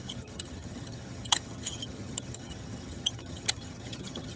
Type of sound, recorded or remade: remade